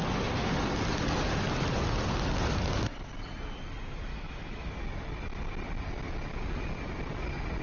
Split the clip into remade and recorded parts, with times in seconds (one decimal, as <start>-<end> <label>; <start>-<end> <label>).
0.0-4.1 recorded; 4.1-4.7 remade; 4.7-7.6 recorded